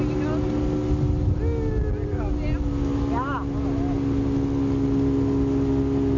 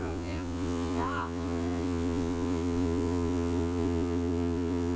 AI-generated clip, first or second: second